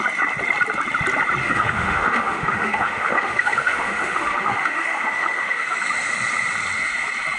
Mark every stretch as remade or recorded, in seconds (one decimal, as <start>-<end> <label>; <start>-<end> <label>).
0.0-1.4 recorded; 1.4-5.8 remade; 5.8-7.4 recorded